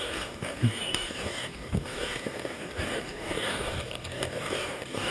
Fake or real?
fake